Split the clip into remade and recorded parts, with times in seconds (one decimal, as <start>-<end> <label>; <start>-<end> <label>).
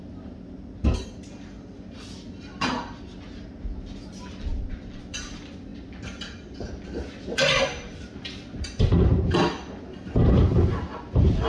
0.0-11.5 recorded